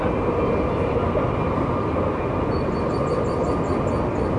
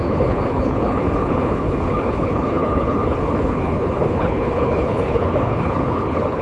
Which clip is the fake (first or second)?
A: second